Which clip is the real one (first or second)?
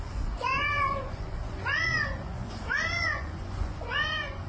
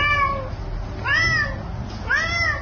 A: second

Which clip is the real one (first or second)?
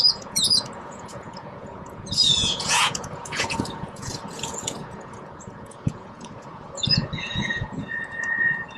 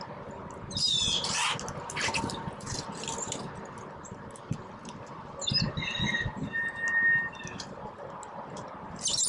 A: second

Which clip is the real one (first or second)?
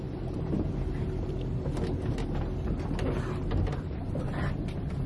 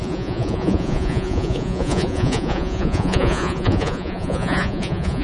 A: first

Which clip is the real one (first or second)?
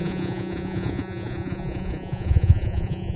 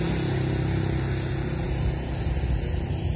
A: second